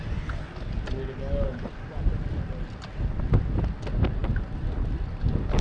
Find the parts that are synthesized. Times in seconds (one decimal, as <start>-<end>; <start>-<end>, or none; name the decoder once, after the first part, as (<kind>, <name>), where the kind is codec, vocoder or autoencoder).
none